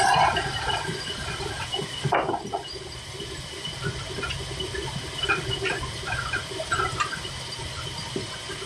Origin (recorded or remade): recorded